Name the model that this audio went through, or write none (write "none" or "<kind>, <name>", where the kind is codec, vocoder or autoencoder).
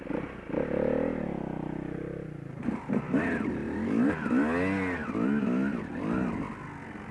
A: none